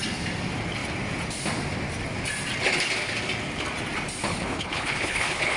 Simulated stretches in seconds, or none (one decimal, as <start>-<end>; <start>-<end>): 4.3-5.6